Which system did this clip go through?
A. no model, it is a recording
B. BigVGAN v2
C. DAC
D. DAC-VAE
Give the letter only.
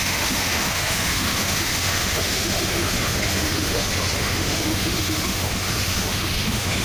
D